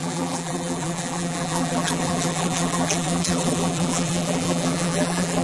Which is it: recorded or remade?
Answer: remade